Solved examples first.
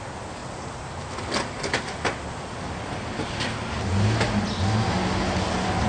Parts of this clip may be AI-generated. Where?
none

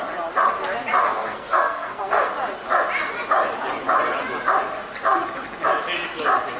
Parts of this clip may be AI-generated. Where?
1.0-2.3 (codec, SNAC)

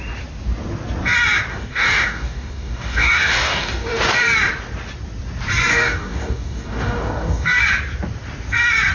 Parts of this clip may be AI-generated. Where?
1.5-4.0 (codec, DAC); 5.7-7.6